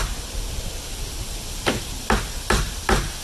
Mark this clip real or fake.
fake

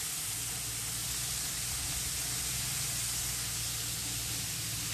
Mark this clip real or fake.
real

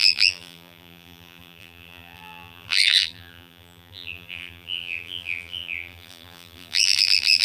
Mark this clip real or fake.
fake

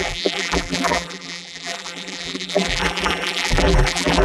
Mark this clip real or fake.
fake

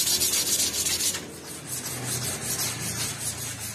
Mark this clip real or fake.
real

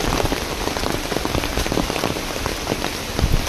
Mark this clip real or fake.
real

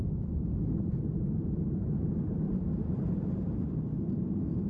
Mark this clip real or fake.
fake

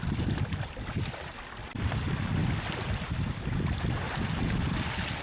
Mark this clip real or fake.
real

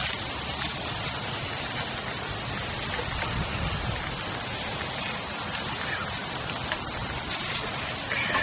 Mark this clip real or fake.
real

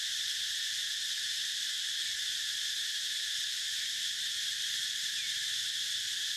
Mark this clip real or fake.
fake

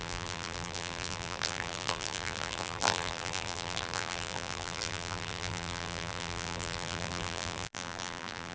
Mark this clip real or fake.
fake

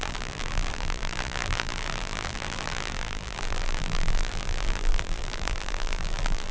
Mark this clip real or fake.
fake